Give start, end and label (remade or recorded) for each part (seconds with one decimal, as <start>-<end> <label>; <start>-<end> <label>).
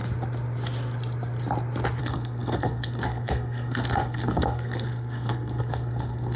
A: 0.0-2.0 recorded; 2.0-6.4 remade